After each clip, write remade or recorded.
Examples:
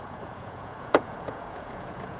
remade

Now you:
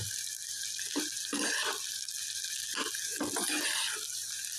recorded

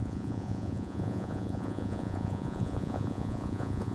remade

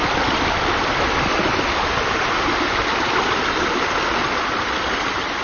recorded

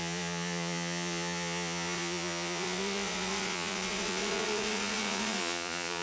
remade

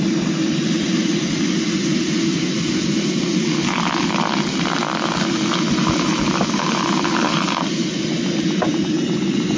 recorded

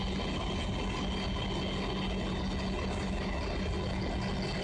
recorded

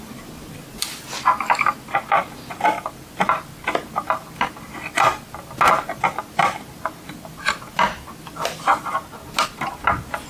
recorded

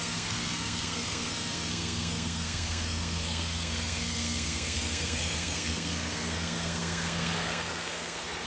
remade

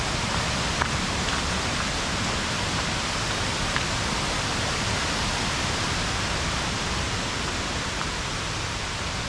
recorded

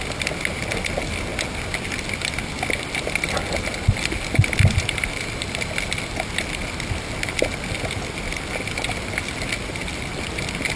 recorded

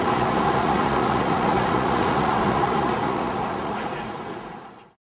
remade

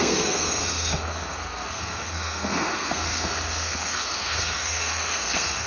remade